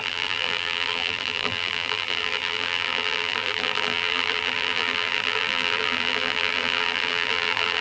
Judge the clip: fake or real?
fake